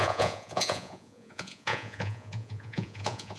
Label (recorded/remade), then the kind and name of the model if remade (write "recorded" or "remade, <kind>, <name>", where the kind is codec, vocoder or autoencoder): remade, vocoder, Vocos